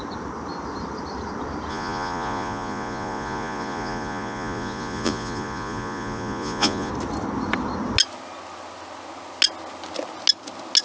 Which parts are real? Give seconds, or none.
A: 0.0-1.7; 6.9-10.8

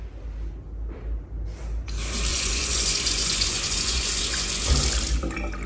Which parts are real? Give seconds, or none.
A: 0.0-2.3; 4.7-5.7

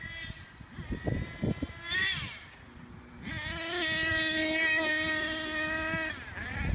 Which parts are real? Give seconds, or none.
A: 0.0-6.7

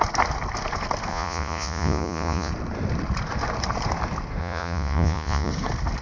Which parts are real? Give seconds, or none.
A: 0.0-1.1; 2.5-4.4; 5.5-6.0

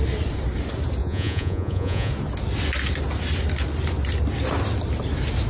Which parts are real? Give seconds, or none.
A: 0.0-1.0; 2.1-5.5